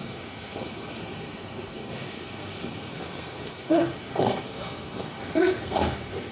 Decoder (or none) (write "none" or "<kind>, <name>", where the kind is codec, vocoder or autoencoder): codec, SNAC